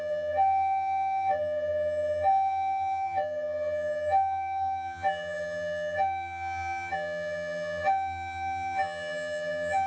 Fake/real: fake